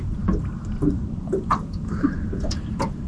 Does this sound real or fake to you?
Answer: real